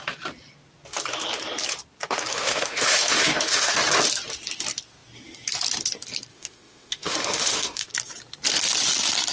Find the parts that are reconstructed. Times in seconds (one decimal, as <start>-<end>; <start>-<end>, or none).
2.3-3.7; 6.3-7.9